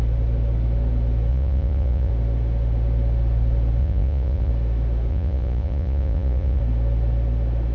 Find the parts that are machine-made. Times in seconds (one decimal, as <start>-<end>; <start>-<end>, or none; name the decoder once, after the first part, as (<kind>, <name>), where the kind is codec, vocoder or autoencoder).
1.3-2.1 (vocoder, Vocos); 3.8-4.5; 5.1-6.6